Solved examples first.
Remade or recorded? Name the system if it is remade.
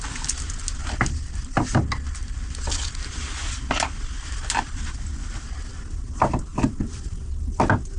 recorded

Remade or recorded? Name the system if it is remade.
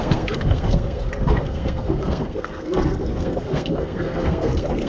remade, codec, SNAC